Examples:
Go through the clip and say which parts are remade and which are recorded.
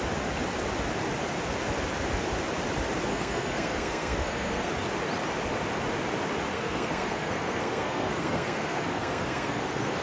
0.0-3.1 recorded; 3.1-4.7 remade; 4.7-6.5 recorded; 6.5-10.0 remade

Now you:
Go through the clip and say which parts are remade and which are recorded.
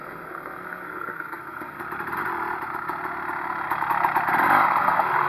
0.0-1.8 remade; 1.8-4.8 recorded; 4.8-5.3 remade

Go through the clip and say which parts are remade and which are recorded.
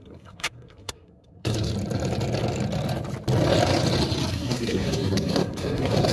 0.0-1.7 remade; 1.7-4.3 recorded; 4.3-6.1 remade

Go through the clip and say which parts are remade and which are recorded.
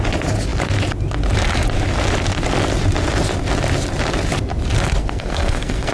0.0-5.0 recorded; 5.0-5.9 remade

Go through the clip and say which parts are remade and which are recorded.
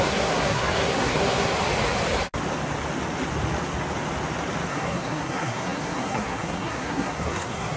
0.0-1.5 remade; 1.5-4.7 recorded; 4.7-7.8 remade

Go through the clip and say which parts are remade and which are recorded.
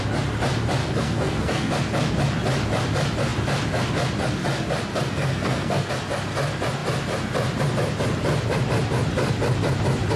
0.0-0.8 recorded; 0.8-1.7 remade; 1.7-4.9 recorded; 4.9-5.9 remade; 5.9-10.2 recorded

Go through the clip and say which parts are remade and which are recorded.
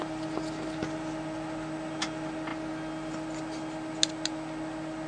0.0-5.1 recorded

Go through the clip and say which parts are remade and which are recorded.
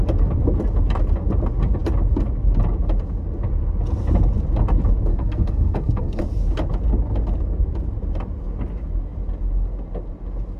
0.0-5.1 recorded; 5.1-6.2 remade; 6.2-10.6 recorded